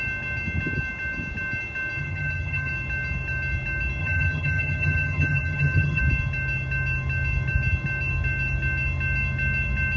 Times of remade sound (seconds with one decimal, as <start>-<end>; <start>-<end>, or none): 2.0-2.7; 4.0-6.0